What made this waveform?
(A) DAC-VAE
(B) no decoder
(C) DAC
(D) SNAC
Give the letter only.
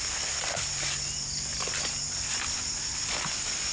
B